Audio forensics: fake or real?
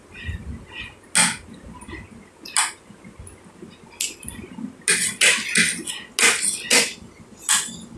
real